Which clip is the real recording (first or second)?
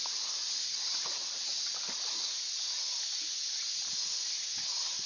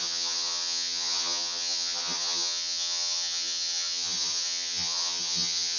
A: first